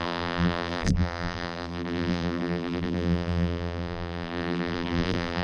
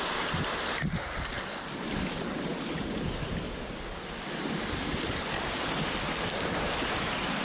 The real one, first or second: second